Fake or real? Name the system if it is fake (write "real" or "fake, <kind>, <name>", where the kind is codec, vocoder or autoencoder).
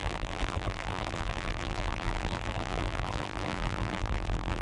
fake, vocoder, BigVGAN v2